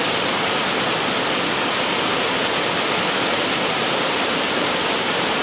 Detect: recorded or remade recorded